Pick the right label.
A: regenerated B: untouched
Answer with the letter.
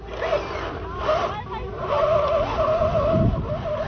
B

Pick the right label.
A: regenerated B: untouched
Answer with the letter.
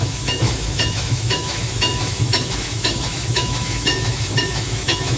A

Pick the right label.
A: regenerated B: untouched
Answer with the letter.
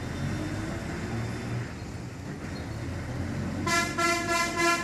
B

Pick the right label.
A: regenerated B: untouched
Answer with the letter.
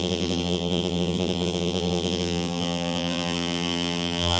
A